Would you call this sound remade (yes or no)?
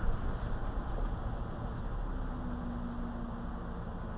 no